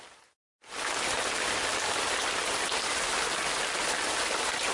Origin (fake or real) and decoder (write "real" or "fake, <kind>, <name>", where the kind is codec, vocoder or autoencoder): real